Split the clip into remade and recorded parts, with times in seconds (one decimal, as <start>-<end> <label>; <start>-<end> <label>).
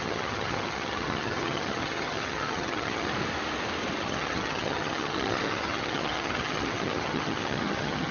0.0-3.1 remade; 3.1-4.0 recorded; 4.0-8.1 remade